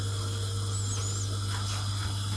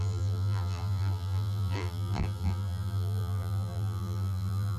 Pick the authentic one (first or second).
first